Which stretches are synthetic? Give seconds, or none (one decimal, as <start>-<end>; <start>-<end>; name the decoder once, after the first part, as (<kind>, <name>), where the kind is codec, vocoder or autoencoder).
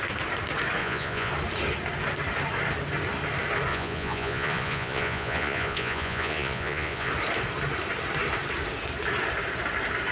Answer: 0.8-1.3 (vocoder, Vocos); 3.7-7.1